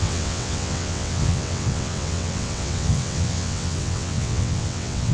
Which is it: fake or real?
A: fake